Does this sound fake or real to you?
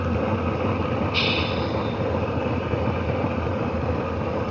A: real